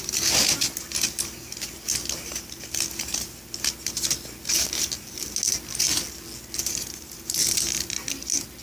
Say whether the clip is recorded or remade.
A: recorded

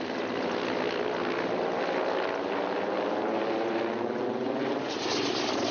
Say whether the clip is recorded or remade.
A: recorded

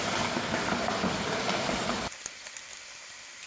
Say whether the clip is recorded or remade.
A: recorded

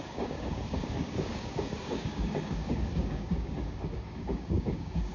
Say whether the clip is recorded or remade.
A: remade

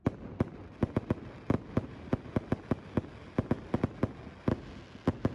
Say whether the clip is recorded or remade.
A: recorded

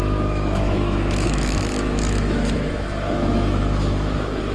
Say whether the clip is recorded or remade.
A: remade